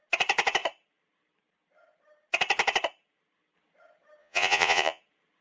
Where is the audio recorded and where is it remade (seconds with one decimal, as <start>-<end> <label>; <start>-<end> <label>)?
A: 0.0-4.2 recorded; 4.2-5.0 remade; 5.0-5.4 recorded